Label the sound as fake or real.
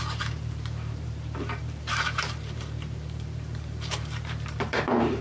fake